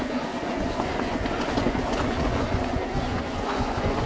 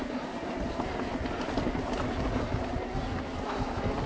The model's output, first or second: first